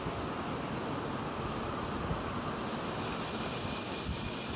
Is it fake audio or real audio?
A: real